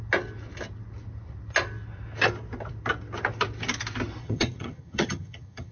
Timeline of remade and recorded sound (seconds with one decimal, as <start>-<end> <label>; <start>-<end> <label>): 0.0-4.2 recorded; 4.2-5.7 remade